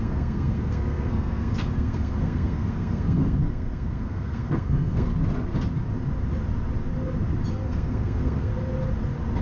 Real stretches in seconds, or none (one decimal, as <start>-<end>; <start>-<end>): 5.1-7.5; 8.5-9.4